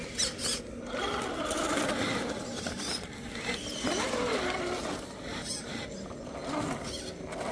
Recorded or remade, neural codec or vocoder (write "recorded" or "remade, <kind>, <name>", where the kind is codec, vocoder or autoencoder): recorded